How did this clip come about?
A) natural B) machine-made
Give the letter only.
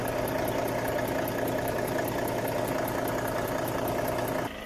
A